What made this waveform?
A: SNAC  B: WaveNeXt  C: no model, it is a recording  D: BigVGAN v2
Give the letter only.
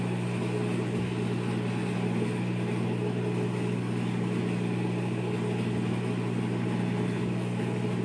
C